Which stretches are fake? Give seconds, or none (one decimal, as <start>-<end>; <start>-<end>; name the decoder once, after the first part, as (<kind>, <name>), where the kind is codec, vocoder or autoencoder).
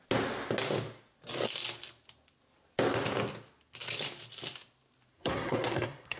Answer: 5.1-6.2 (codec, SNAC)